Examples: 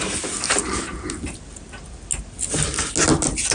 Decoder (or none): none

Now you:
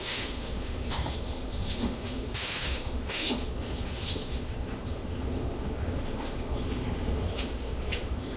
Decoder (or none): autoencoder, DAC-VAE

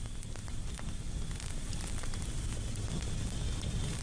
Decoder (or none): none